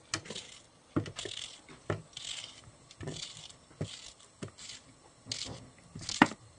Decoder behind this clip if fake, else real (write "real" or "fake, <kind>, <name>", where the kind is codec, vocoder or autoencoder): real